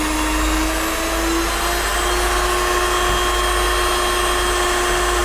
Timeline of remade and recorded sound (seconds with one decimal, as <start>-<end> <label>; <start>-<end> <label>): 0.0-5.2 recorded